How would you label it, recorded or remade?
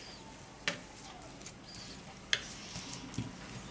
recorded